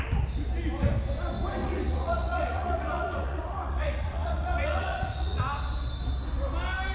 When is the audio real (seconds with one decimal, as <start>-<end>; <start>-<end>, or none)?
0.0-1.6; 5.4-6.9